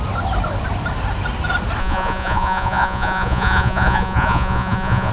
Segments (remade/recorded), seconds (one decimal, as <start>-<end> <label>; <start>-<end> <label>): 0.0-1.8 recorded; 1.8-5.1 remade